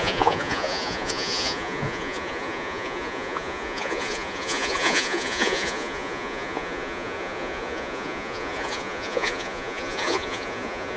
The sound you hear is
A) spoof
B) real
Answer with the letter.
A